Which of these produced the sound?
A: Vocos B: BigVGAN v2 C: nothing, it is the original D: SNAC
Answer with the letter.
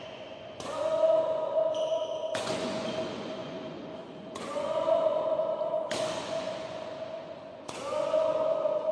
A